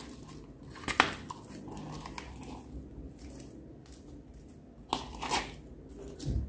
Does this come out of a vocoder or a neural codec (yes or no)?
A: no